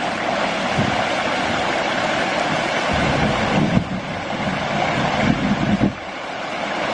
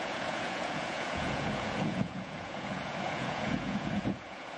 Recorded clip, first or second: first